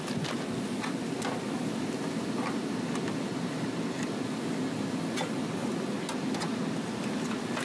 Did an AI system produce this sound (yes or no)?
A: no